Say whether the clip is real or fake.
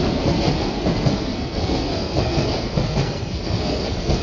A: fake